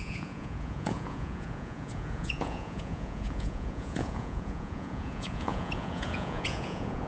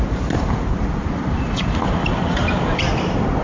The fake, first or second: first